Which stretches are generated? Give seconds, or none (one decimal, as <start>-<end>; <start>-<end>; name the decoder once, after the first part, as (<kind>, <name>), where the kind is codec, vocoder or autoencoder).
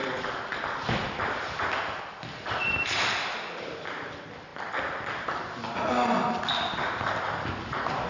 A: 0.0-4.5 (vocoder, BigVGAN v2); 7.6-8.1